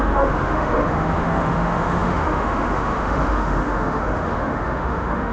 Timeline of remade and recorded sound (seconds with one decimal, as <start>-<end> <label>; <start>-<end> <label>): 0.0-5.3 remade